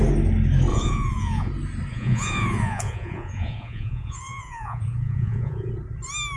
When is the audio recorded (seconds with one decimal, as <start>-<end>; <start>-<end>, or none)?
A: 0.0-0.7; 1.5-1.9; 5.7-6.4